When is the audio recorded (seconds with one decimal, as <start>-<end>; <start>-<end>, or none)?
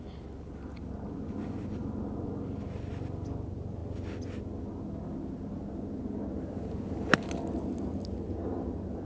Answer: 0.0-9.0